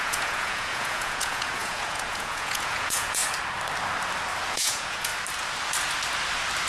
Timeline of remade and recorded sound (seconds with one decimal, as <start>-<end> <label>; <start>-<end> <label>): 0.0-3.2 remade; 3.2-4.5 recorded; 4.5-5.1 remade; 5.1-6.7 recorded

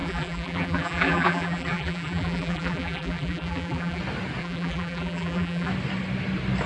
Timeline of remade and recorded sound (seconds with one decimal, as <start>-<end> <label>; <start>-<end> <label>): 0.0-4.0 remade; 4.0-4.4 recorded; 4.4-5.7 remade; 5.7-6.7 recorded

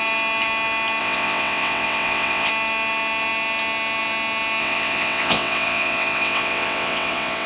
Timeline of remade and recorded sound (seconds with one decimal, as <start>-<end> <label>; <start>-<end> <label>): 0.0-1.0 recorded; 1.0-2.5 remade; 2.5-4.6 recorded; 4.6-7.5 remade